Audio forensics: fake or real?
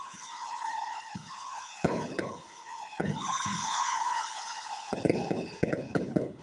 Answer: fake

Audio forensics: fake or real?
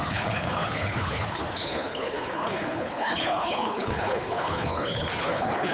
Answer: fake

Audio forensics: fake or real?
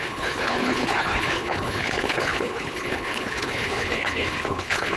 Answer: fake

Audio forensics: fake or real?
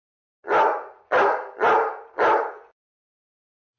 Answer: real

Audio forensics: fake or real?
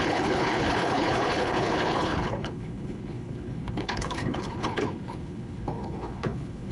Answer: fake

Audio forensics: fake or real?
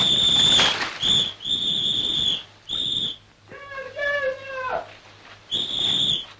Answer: real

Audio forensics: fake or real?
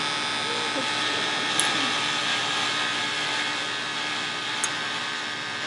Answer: real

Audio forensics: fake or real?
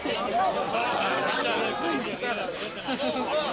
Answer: real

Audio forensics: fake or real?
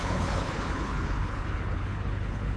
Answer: fake